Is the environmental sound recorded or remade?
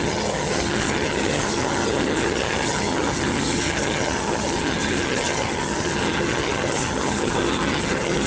remade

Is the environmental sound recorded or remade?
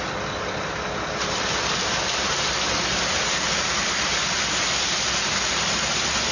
recorded